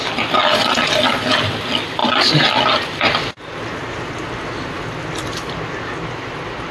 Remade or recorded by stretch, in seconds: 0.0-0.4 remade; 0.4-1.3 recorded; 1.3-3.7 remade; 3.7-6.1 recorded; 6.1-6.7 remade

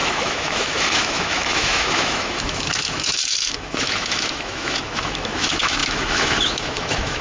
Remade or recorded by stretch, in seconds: 0.0-7.2 remade

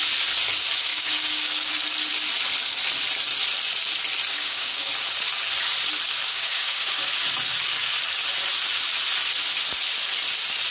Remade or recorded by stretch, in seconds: 0.0-0.9 recorded; 0.9-1.7 remade; 1.7-4.3 recorded; 4.3-4.9 remade; 4.9-6.3 recorded; 6.3-7.1 remade; 7.1-10.7 recorded

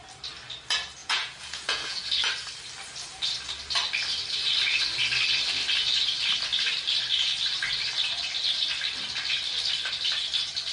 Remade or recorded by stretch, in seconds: 0.0-1.0 recorded; 1.0-2.1 remade; 2.1-10.7 recorded

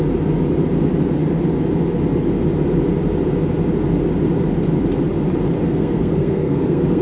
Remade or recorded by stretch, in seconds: 0.0-5.6 recorded; 5.6-7.0 remade

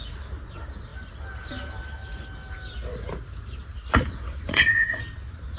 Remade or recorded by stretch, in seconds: 0.0-4.5 recorded; 4.5-5.0 remade; 5.0-5.6 recorded

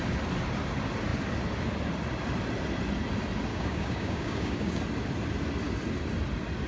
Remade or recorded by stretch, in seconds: 0.0-3.5 recorded; 3.5-4.8 remade; 4.8-6.7 recorded